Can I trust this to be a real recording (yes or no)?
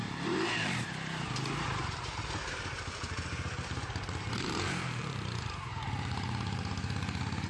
no